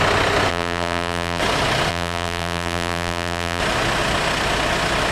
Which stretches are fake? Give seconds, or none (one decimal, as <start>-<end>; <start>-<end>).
0.5-1.4; 1.9-3.6